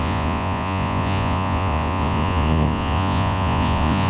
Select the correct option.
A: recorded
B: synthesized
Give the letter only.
B